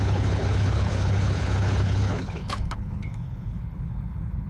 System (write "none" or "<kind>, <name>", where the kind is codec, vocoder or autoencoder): codec, HILCodec